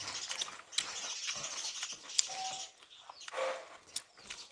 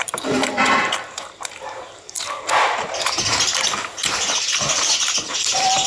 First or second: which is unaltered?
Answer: first